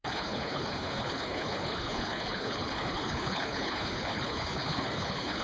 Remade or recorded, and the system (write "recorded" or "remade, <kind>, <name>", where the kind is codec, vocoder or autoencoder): remade, codec, HILCodec